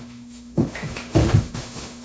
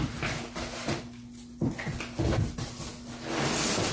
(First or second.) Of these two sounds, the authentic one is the second